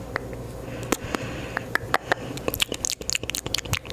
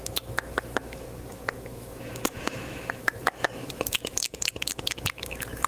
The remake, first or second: second